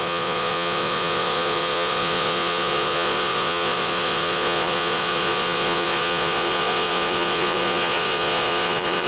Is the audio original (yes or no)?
no